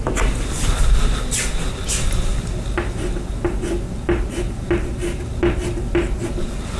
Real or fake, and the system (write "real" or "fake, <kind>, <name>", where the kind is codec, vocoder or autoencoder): real